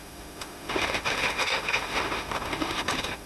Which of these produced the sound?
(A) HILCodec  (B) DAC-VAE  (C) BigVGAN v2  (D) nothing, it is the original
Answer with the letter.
B